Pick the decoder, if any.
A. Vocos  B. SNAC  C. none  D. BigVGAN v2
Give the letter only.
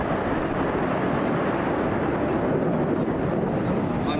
C